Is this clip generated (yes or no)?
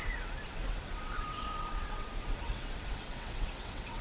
yes